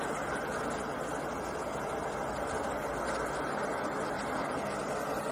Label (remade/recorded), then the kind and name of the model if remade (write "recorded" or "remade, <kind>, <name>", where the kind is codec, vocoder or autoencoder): recorded